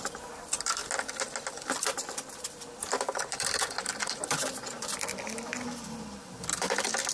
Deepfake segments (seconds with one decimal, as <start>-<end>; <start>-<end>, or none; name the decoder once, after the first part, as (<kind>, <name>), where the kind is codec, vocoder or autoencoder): 0.0-0.8 (vocoder, BigVGAN v2); 1.5-7.1